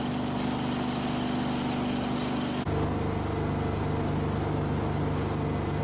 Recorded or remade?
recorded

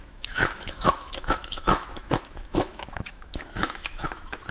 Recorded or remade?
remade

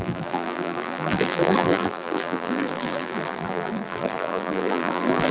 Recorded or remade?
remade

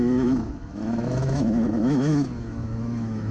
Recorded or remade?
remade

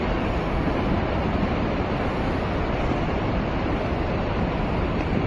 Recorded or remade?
recorded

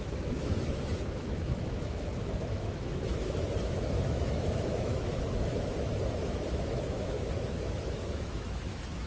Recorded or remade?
remade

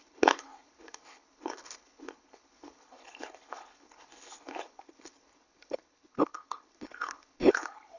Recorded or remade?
remade